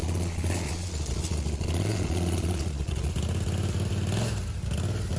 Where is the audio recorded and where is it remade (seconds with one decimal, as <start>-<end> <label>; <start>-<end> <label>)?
0.0-3.1 remade; 3.1-5.2 recorded